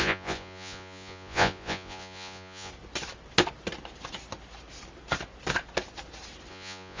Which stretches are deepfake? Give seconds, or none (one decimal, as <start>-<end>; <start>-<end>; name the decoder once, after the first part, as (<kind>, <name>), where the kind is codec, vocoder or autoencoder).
0.0-2.7 (vocoder, Vocos); 6.5-7.0